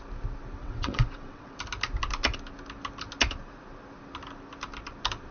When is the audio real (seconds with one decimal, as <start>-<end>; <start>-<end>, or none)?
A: 0.0-0.6; 1.6-5.3